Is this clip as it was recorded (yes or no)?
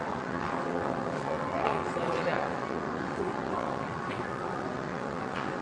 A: no